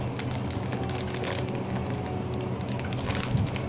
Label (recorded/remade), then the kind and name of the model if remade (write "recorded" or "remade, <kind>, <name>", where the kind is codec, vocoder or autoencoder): recorded